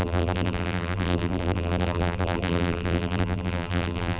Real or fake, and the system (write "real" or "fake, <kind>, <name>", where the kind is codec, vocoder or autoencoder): fake, vocoder, BigVGAN v2